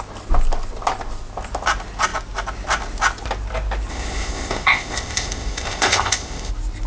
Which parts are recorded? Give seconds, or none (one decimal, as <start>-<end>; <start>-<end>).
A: 0.0-3.9; 6.5-6.9

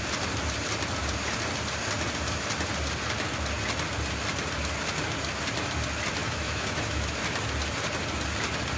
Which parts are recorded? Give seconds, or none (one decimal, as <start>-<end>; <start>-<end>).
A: 0.0-6.2; 7.1-8.8

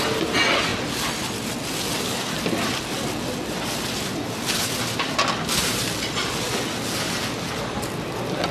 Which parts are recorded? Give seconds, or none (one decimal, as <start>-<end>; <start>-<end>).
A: 0.0-8.5

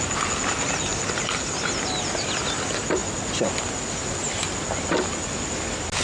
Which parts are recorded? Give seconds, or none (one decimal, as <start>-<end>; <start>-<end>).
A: 0.0-6.0

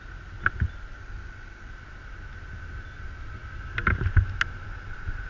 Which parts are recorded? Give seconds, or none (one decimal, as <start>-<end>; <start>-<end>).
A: 0.0-1.0; 1.7-5.3

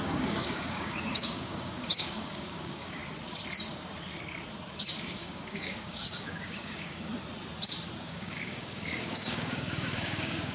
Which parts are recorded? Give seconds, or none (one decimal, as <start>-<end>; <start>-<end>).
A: 3.0-5.0; 7.1-8.0

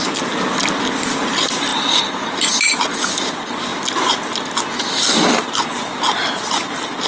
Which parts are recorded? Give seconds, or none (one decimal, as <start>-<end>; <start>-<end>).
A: 0.0-7.1

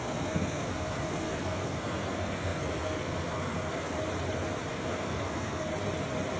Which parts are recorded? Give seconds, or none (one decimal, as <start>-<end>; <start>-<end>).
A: 3.9-4.7; 5.7-6.4